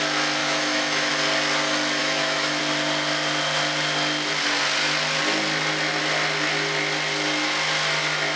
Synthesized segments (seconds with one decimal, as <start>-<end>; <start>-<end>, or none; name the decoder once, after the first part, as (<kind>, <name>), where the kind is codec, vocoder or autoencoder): 0.4-1.1 (autoencoder, DAC-VAE); 2.0-2.6